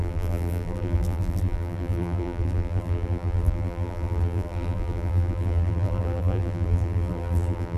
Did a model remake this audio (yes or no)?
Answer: yes